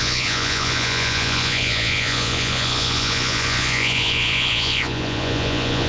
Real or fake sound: fake